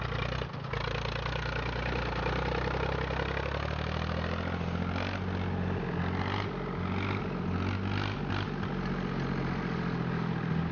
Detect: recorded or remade recorded